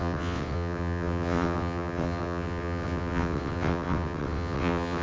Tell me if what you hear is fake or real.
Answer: fake